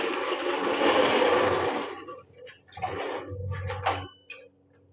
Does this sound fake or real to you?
real